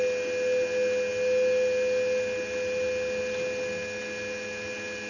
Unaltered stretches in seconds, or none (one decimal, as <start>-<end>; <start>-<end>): 0.0-5.1